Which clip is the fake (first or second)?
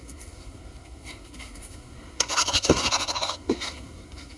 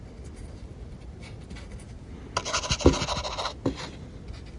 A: first